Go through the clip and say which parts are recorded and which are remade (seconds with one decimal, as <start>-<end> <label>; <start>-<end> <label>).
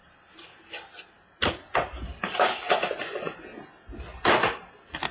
0.0-2.6 remade; 2.6-4.1 recorded; 4.1-5.1 remade